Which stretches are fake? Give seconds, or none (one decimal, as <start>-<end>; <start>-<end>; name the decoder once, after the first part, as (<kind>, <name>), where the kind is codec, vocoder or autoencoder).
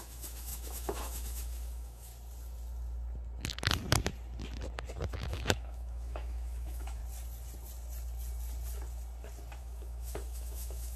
0.0-2.1 (autoencoder, DAC-VAE); 5.1-7.0; 9.6-11.0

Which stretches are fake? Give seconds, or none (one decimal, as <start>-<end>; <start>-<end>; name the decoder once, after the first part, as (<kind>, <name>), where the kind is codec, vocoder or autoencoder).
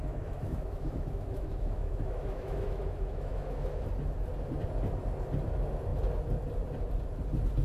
0.0-3.8 (autoencoder, DAC-VAE)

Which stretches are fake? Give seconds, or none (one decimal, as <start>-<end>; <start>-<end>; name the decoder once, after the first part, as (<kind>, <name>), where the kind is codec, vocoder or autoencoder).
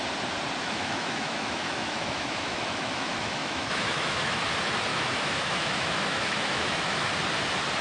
0.6-4.4 (autoencoder, DAC-VAE); 4.9-7.1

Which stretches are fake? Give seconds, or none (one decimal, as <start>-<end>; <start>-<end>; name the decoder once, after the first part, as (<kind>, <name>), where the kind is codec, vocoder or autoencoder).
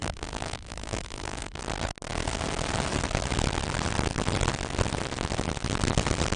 0.0-1.6 (autoencoder, DAC-VAE)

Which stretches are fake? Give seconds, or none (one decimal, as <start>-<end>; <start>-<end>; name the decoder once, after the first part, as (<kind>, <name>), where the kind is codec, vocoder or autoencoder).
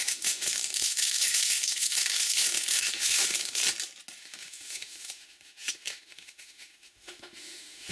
0.0-3.6 (autoencoder, DAC-VAE); 4.2-7.9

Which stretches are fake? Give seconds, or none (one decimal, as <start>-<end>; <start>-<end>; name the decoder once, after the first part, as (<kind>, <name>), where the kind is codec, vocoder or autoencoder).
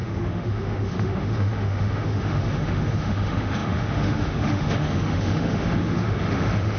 0.0-6.8 (autoencoder, DAC-VAE)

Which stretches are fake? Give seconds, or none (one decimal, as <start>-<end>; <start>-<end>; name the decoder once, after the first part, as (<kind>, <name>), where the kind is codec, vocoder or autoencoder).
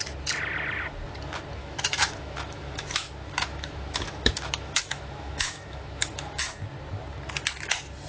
1.6-6.4 (autoencoder, DAC-VAE)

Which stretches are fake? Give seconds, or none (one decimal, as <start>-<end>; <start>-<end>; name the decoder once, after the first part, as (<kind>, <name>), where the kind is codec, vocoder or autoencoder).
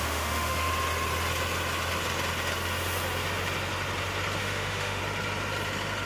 0.0-0.7 (autoencoder, DAC-VAE); 4.4-5.0